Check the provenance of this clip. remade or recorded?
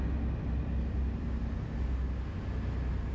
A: recorded